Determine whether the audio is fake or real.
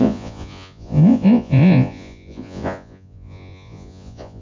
fake